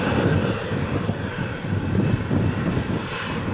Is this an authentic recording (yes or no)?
yes